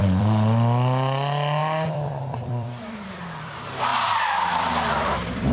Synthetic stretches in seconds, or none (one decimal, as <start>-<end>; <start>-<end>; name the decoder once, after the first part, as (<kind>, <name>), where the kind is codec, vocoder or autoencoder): 0.0-5.5 (vocoder, BigVGAN v2)